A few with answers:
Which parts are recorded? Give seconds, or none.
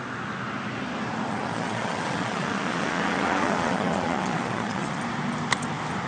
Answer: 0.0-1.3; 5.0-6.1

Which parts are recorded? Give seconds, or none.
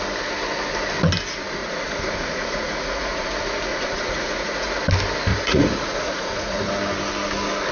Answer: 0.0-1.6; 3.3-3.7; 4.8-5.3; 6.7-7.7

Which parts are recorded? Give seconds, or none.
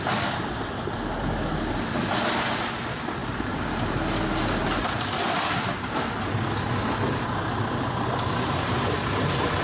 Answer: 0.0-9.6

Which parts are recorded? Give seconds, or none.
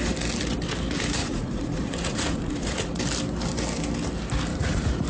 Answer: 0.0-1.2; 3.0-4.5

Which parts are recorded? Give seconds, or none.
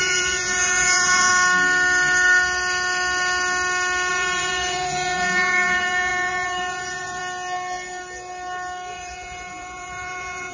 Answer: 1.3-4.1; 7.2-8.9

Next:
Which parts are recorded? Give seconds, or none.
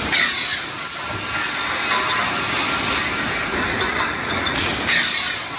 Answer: 0.0-3.4; 4.7-5.6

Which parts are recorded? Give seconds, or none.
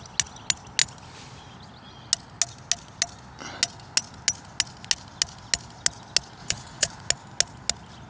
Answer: 0.0-6.4; 7.1-8.1